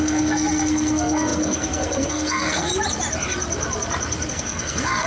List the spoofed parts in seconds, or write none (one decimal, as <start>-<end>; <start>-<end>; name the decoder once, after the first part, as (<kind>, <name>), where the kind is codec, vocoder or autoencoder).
0.0-2.7 (codec, SNAC); 4.3-5.1